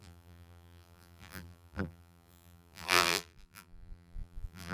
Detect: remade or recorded remade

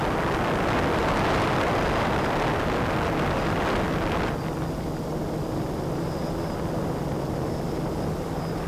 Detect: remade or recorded recorded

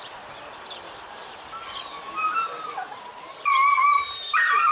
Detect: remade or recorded remade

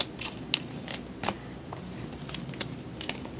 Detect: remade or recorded recorded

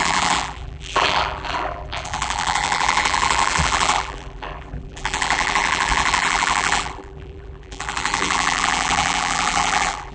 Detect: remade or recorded remade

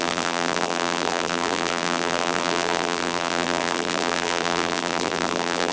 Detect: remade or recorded remade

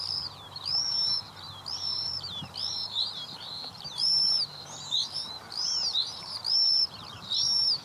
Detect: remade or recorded remade